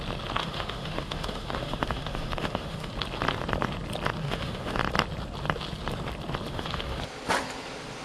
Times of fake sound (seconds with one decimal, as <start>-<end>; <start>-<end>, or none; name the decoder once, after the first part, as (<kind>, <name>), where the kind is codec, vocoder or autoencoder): 0.4-2.9 (autoencoder, DAC-VAE); 4.2-4.8; 6.5-7.0